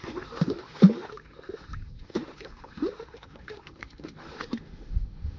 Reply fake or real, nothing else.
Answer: fake